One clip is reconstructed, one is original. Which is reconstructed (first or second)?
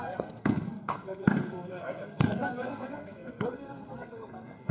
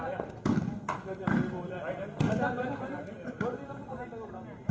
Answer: first